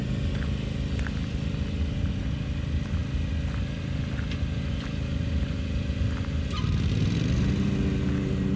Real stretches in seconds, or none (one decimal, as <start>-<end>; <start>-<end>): 0.0-8.6